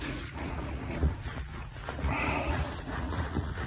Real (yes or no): no